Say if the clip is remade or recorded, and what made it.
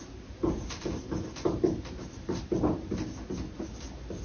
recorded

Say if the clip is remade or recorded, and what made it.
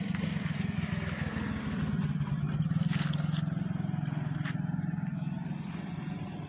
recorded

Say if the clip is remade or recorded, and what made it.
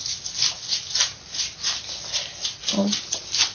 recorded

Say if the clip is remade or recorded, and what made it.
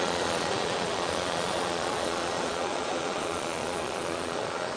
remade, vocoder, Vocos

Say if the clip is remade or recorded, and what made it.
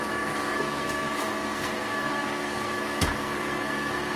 remade, codec, SNAC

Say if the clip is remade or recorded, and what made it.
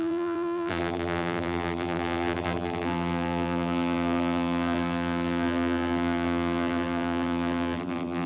remade, vocoder, BigVGAN v2